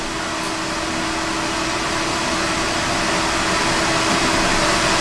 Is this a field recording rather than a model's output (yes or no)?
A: yes